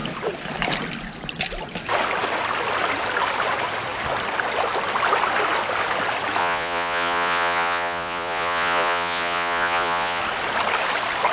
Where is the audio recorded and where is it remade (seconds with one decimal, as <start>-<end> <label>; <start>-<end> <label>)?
0.0-6.4 recorded; 6.4-10.2 remade; 10.2-11.3 recorded